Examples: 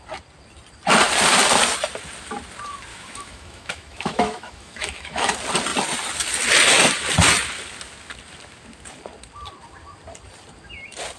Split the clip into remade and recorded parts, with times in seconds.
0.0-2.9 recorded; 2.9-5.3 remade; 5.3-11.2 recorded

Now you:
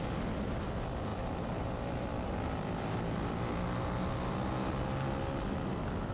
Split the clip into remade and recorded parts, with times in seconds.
0.0-6.1 recorded

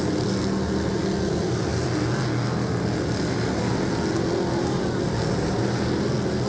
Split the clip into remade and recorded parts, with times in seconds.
0.0-6.5 recorded

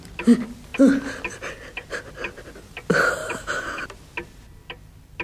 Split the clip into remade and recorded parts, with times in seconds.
0.0-3.2 recorded; 3.2-3.8 remade; 3.8-5.2 recorded

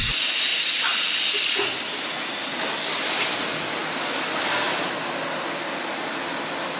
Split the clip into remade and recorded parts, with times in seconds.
0.0-6.8 recorded

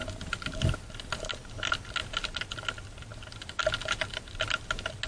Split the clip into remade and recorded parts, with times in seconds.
0.0-5.1 recorded